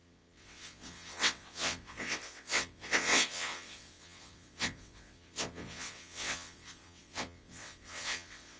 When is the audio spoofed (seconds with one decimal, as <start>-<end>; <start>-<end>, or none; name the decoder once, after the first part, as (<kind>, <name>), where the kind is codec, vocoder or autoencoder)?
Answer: 0.0-8.6 (vocoder, WaveNeXt)